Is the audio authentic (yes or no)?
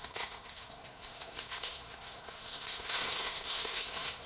no